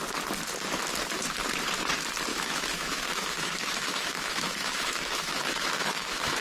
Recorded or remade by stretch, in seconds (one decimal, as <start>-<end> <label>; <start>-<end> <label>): 0.0-2.3 recorded; 2.3-6.4 remade